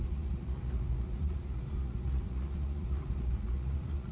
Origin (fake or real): fake